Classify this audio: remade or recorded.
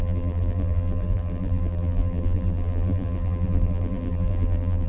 remade